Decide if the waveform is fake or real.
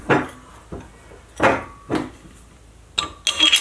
real